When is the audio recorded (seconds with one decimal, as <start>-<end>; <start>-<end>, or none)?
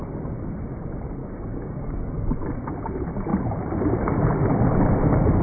0.0-1.2; 2.3-5.4